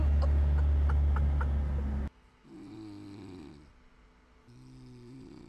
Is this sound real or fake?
real